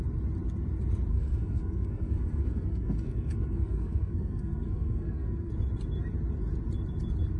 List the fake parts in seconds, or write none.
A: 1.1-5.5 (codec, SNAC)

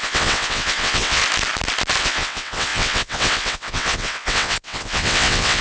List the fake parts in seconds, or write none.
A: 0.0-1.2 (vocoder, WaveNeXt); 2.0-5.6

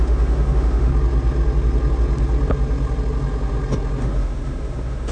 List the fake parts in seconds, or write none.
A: 0.0-0.9 (autoencoder, DAC-VAE); 4.0-5.1